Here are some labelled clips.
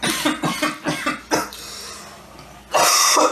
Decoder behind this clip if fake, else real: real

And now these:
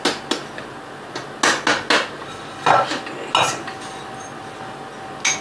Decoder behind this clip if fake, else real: real